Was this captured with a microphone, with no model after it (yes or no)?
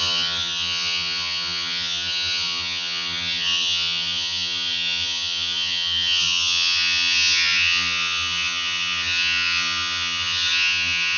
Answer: no